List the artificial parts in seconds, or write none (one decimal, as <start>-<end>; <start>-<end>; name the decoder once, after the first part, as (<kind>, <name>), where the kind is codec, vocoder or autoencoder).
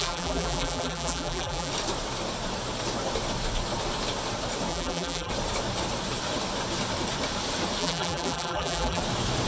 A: 0.0-1.7 (vocoder, BigVGAN v2); 4.7-5.3; 7.8-9.0